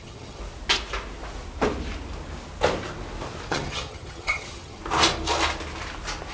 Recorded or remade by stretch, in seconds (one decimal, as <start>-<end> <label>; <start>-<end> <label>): 0.0-0.4 remade; 0.4-3.5 recorded; 3.5-4.8 remade; 4.8-6.3 recorded